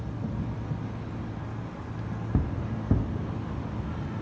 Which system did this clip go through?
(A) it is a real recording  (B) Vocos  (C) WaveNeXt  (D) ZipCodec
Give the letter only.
A